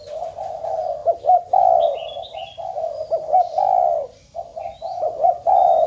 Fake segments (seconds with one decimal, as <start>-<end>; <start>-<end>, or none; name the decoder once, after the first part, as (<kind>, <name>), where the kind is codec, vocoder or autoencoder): 4.5-5.9 (vocoder, Vocos)